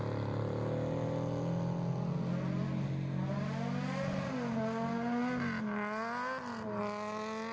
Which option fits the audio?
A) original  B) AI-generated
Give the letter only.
A